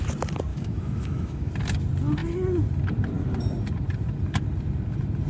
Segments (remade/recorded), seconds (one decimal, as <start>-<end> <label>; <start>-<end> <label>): 0.0-0.5 recorded; 0.5-1.5 remade; 1.5-5.3 recorded